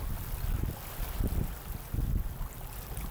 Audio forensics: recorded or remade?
recorded